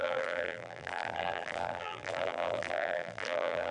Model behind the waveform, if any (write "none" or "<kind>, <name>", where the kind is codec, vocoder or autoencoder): vocoder, BigVGAN v2